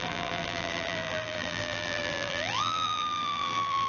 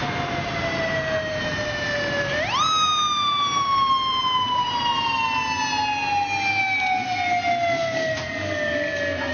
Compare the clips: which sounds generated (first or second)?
first